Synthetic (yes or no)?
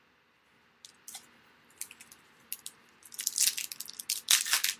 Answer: no